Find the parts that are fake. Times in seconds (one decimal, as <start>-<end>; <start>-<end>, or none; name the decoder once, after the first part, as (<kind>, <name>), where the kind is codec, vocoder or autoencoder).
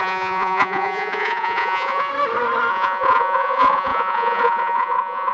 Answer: 0.0-2.1 (vocoder, Vocos); 2.7-5.3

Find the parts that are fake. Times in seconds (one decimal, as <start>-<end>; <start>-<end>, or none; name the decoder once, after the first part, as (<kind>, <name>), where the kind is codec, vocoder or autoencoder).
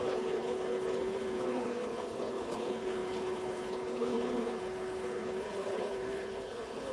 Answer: 0.0-6.9 (codec, HILCodec)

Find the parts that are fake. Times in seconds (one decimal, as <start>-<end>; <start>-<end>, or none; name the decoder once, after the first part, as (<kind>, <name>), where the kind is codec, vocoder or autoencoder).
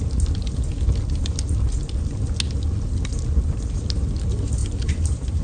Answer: 4.6-5.4 (vocoder, BigVGAN v2)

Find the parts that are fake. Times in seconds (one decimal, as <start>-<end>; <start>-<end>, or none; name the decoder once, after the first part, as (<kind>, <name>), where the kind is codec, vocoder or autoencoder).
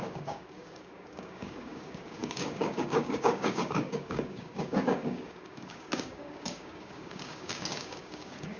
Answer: 0.0-8.6 (codec, DAC)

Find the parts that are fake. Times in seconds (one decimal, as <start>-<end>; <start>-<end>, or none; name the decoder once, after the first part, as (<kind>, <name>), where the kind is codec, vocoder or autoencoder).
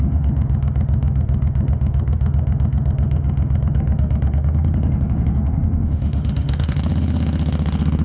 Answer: 0.0-8.0 (autoencoder, DAC-VAE)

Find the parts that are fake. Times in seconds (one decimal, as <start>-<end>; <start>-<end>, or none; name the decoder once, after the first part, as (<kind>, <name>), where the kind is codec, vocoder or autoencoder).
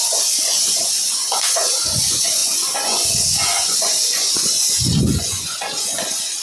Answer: 0.0-6.4 (vocoder, Vocos)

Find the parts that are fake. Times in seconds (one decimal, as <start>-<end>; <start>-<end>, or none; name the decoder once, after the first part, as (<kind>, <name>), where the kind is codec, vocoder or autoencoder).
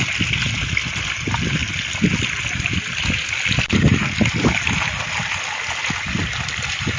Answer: none